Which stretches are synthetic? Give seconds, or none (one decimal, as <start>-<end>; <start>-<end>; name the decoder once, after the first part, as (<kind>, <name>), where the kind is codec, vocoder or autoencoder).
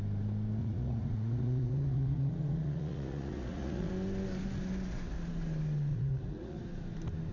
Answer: 0.6-3.9 (vocoder, Vocos); 5.9-6.6